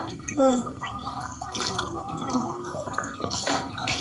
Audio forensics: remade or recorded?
remade